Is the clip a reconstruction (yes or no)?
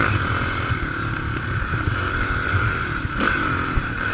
yes